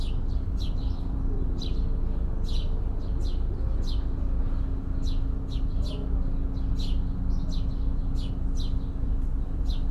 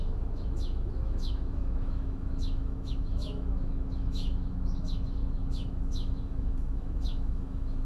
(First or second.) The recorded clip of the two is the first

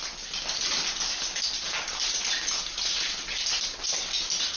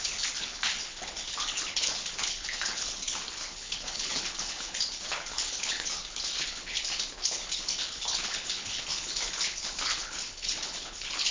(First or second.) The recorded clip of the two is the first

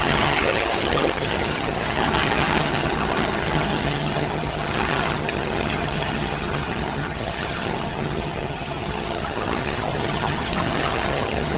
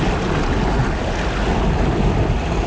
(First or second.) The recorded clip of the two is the second